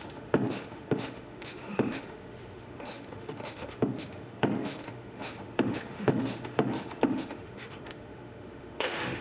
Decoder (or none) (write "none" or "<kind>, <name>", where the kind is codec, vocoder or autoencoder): autoencoder, DAC-VAE